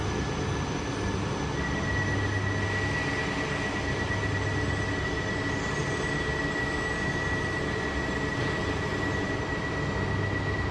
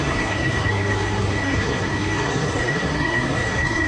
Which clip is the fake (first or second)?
second